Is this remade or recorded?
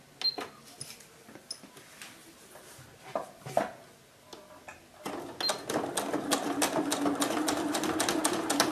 recorded